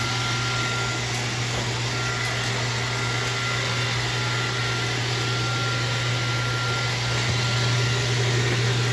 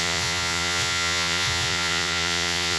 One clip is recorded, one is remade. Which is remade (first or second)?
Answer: second